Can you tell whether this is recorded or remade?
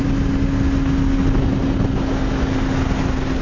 recorded